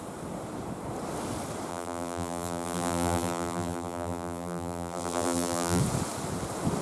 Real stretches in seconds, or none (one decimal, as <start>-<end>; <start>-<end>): 0.0-1.7; 5.8-6.8